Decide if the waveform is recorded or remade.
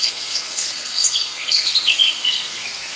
remade